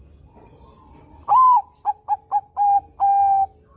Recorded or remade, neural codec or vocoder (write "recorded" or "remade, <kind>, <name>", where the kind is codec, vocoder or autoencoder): recorded